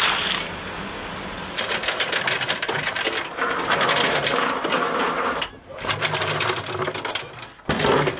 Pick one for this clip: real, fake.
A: real